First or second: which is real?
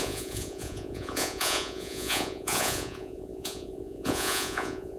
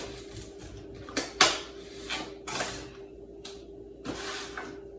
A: second